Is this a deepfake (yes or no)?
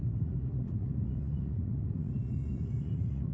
yes